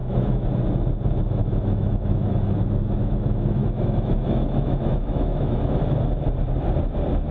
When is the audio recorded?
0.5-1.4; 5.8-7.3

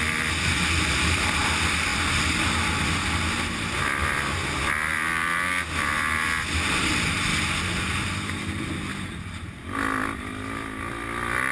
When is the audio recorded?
0.0-11.5